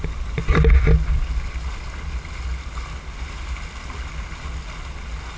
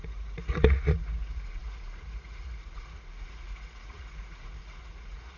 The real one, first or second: first